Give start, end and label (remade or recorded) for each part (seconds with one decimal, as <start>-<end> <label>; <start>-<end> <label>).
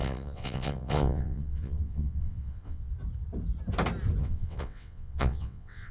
0.0-2.9 remade; 2.9-4.2 recorded; 4.2-5.9 remade